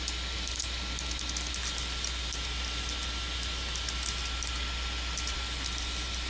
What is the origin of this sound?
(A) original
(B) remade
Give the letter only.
A